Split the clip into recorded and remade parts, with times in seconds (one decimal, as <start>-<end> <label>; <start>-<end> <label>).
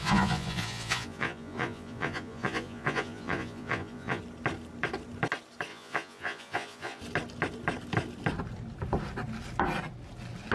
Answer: 0.0-4.2 remade; 4.2-5.7 recorded; 5.7-7.0 remade; 7.0-10.5 recorded